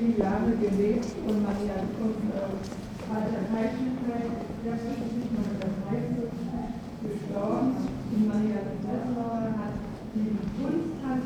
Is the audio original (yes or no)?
yes